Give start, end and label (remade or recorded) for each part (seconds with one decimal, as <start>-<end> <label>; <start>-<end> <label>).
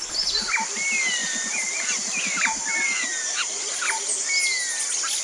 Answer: 0.0-1.2 recorded; 1.2-3.8 remade; 3.8-5.2 recorded